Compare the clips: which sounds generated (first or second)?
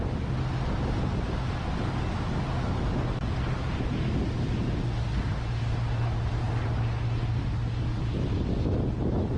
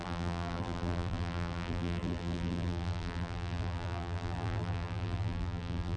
second